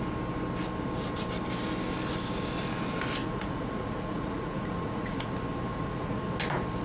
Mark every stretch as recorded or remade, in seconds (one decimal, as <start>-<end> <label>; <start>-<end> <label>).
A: 0.0-3.2 recorded; 3.2-5.3 remade; 5.3-5.7 recorded; 5.7-6.2 remade; 6.2-6.8 recorded